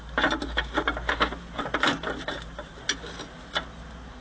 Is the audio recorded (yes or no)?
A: yes